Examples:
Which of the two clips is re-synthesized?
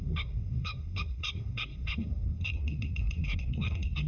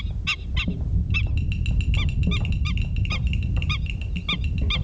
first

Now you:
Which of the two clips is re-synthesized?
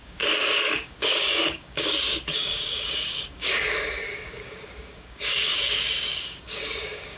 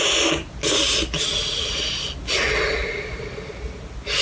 first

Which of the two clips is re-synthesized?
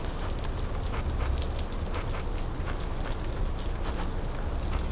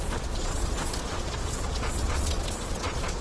second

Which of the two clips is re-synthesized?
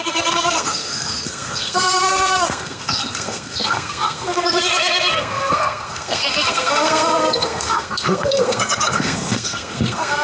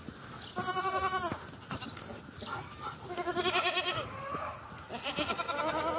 first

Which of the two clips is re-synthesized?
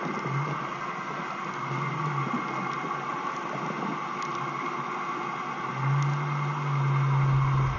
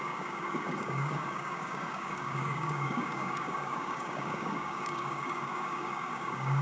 second